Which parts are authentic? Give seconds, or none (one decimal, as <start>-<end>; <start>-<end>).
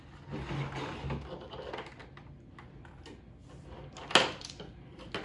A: 0.0-5.2